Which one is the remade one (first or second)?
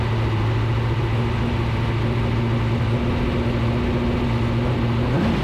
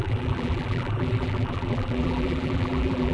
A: second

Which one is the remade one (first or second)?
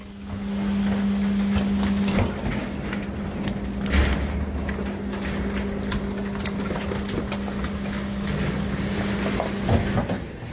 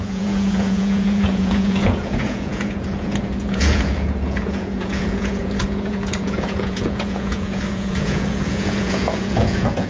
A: second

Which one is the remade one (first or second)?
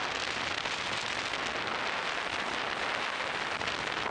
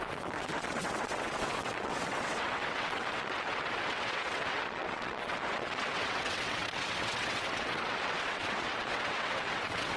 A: second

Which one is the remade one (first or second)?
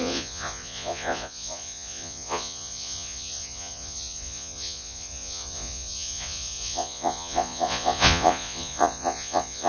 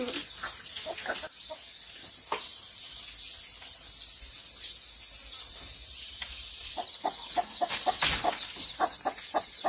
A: first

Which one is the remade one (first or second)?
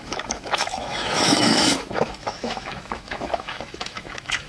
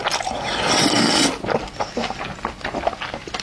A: first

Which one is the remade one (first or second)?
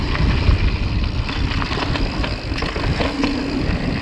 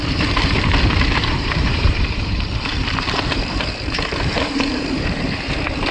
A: second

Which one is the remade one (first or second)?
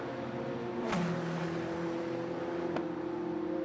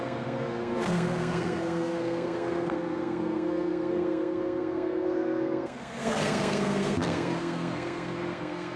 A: second